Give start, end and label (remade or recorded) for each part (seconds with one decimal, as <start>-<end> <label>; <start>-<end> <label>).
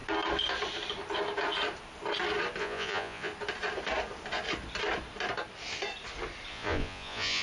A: 0.0-2.6 recorded; 2.6-3.3 remade; 3.3-6.5 recorded; 6.5-7.4 remade